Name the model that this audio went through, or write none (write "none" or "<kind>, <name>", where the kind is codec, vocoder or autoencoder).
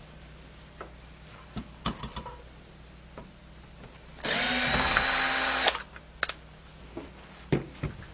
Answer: none